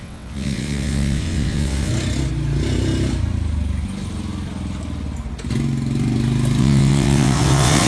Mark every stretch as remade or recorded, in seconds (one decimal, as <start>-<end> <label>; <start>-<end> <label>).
0.0-1.9 remade; 1.9-6.6 recorded; 6.6-7.9 remade